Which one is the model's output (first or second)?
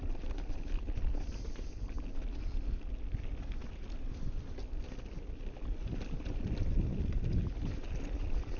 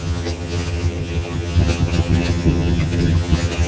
second